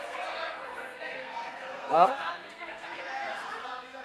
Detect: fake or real fake